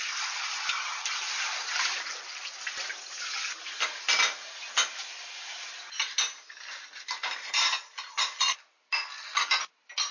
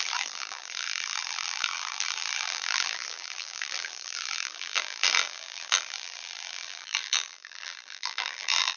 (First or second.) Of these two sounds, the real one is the first